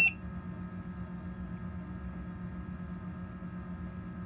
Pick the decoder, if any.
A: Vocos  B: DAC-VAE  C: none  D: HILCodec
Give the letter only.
C